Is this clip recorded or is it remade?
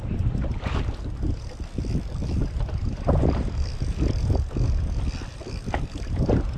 recorded